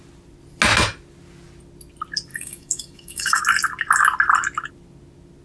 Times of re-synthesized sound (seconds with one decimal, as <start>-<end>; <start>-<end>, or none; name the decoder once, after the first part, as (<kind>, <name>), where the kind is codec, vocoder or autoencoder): 2.3-3.4 (autoencoder, DAC-VAE)